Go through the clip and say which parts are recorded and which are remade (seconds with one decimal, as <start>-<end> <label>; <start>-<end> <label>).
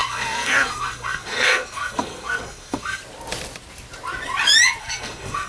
0.0-3.0 remade; 3.0-4.8 recorded; 4.8-5.5 remade